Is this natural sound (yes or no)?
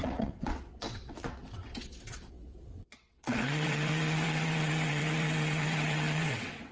no